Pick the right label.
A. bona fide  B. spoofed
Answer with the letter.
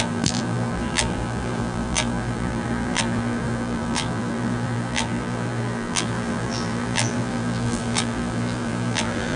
B